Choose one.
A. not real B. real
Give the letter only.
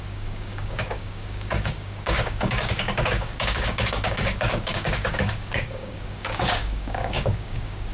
A